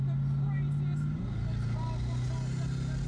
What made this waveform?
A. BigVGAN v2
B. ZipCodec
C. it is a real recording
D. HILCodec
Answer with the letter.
C